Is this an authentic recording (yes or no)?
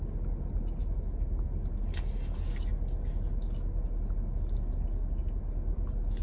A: yes